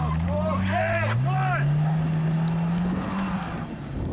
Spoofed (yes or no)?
no